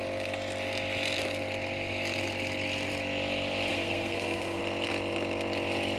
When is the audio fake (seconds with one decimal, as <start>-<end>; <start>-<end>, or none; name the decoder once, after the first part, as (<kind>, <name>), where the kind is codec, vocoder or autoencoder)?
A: 3.7-4.6 (codec, SNAC)